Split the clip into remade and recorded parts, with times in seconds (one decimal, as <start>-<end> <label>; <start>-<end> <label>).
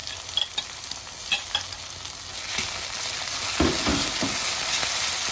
0.0-5.3 recorded